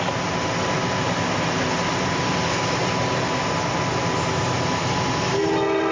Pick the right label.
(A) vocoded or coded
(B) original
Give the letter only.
B